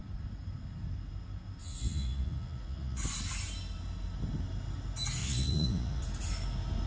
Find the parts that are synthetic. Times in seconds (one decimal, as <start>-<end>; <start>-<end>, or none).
1.6-3.0; 5.2-6.0